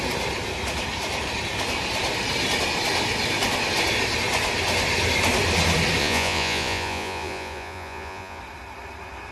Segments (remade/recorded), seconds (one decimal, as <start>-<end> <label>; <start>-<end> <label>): 0.0-6.0 recorded; 6.0-8.4 remade; 8.4-9.3 recorded